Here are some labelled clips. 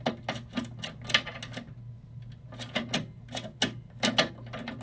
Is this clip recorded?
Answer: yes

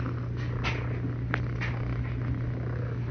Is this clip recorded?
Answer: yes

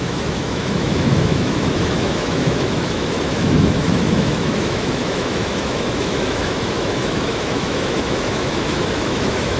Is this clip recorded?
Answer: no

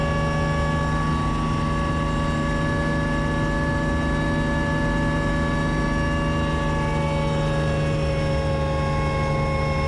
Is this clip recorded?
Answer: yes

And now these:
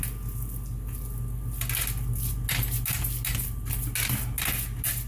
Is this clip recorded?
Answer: yes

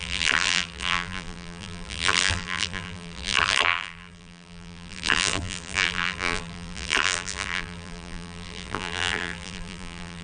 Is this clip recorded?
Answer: no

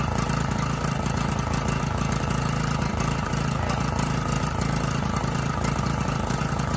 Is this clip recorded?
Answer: no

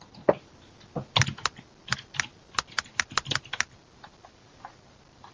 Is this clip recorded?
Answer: yes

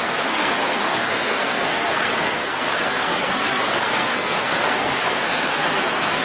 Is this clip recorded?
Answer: no